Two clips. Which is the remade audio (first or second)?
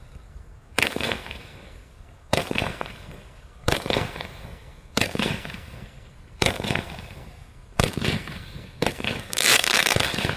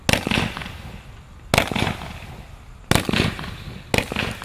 first